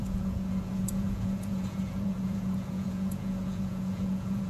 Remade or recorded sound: remade